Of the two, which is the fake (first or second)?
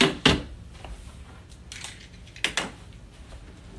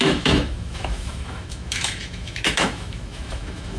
second